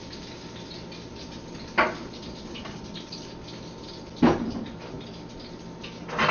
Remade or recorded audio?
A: recorded